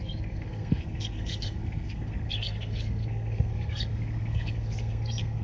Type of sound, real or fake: fake